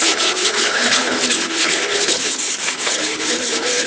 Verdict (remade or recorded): remade